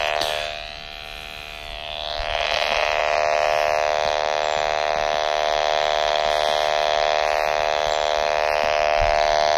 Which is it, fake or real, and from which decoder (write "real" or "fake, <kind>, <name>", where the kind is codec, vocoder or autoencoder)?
real